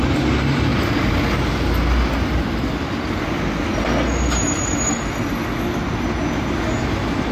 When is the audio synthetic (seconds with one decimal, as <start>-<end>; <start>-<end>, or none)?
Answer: none